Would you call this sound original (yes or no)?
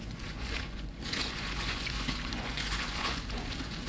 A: no